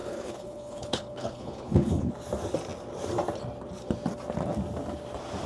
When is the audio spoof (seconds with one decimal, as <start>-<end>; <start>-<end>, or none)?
0.0-2.1